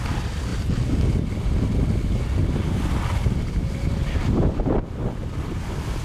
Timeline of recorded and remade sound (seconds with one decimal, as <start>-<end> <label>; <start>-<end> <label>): 0.0-6.0 recorded